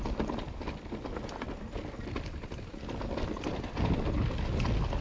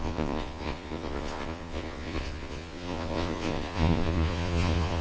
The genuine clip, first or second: first